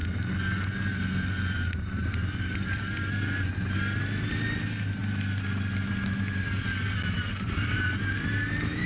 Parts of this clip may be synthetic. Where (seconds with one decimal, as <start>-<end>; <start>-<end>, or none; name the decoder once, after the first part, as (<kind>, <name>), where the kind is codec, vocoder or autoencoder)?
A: none